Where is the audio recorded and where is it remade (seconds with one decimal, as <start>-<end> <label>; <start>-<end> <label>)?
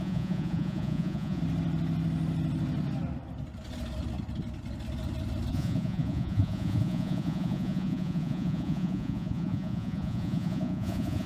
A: 0.0-1.4 remade; 1.4-5.5 recorded; 5.5-11.3 remade